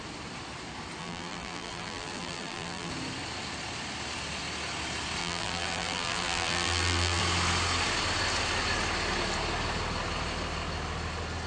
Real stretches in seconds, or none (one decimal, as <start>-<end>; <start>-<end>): 0.0-1.0; 2.9-5.2; 7.2-11.5